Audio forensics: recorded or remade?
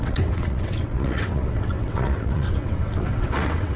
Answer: remade